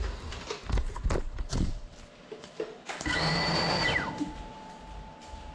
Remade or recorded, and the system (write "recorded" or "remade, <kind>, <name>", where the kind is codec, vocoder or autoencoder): remade, vocoder, BigVGAN v2